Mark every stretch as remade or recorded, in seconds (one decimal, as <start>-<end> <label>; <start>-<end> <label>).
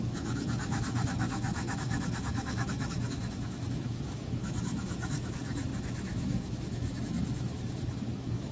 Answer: 0.0-8.5 remade